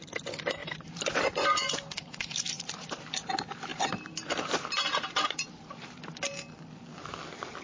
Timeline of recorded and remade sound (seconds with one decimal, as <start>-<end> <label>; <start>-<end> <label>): 0.0-0.6 recorded; 0.6-2.5 remade; 2.5-3.7 recorded; 3.7-6.0 remade; 6.0-7.6 recorded